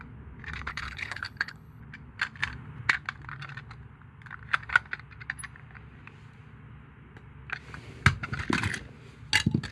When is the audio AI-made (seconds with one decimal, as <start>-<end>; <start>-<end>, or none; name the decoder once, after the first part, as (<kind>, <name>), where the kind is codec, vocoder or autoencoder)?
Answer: 0.7-1.8 (codec, HILCodec)